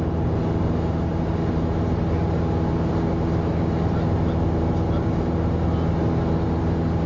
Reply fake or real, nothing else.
real